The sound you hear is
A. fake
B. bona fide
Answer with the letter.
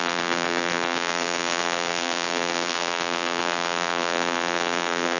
A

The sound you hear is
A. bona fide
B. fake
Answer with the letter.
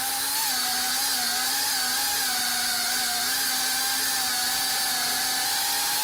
A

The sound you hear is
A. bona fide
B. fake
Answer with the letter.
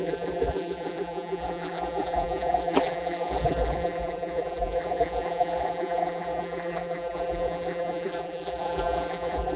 B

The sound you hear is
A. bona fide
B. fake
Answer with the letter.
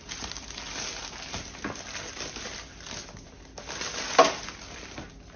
A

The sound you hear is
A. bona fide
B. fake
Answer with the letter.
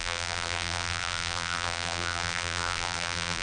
B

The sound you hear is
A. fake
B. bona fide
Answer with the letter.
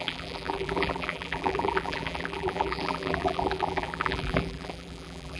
A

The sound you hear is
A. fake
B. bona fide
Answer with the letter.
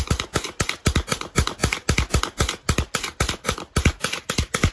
B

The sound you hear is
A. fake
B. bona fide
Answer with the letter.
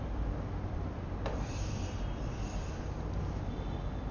A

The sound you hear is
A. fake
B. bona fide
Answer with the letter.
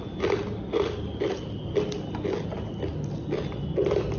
B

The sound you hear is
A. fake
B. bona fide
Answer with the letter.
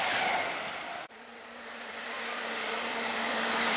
A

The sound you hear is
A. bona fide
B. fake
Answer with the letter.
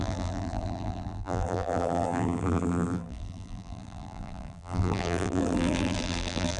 B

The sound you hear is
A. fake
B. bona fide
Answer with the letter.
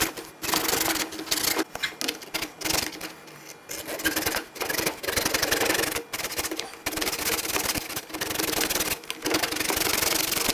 B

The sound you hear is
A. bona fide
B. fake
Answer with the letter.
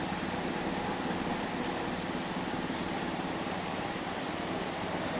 A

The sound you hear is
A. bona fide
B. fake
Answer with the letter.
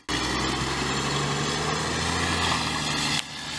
A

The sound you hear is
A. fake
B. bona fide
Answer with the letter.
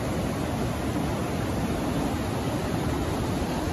B